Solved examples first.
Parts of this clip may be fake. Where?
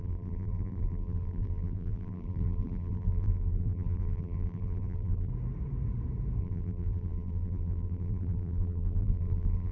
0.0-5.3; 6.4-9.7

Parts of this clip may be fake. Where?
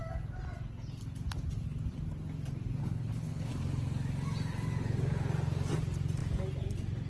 2.8-3.5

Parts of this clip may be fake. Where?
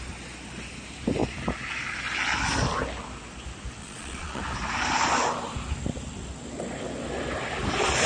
3.8-4.4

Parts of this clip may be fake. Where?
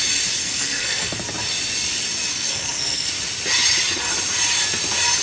0.4-1.2; 2.3-3.1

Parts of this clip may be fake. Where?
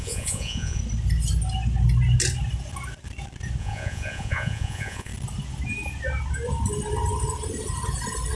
0.0-0.8; 3.6-5.1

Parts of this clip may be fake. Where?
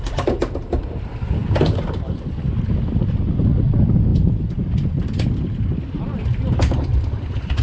none